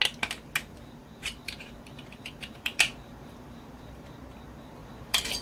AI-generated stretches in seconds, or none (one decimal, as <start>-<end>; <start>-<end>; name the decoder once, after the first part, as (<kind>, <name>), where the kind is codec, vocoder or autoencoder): 1.0-4.2 (vocoder, BigVGAN v2); 4.8-5.4